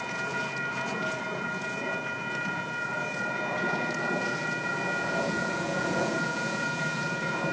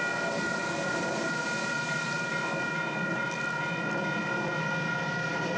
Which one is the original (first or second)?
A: second